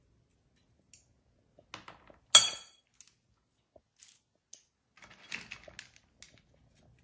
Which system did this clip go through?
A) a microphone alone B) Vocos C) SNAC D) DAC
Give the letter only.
A